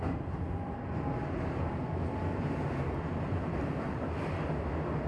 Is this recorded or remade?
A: recorded